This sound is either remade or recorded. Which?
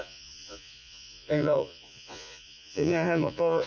remade